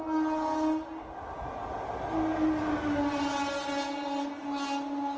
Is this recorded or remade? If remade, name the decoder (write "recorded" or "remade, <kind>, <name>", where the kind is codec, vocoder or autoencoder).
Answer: recorded